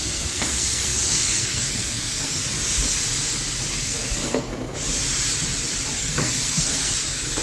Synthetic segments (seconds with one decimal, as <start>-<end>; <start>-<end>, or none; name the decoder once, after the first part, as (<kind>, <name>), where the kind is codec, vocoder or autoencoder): 0.0-2.4 (codec, SNAC); 3.7-4.5; 6.0-7.4